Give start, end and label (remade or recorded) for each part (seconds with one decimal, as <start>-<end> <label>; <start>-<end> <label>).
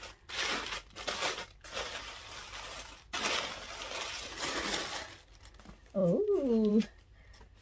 0.0-7.6 recorded